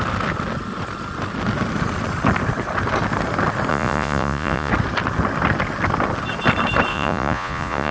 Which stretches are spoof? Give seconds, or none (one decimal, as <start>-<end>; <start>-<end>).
3.7-4.7; 6.9-7.9